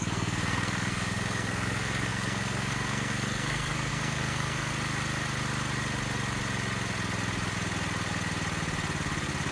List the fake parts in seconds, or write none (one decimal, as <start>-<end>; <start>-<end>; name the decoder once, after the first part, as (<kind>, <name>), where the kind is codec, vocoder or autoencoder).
0.0-4.7 (codec, SNAC)